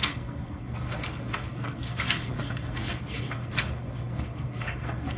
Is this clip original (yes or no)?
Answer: no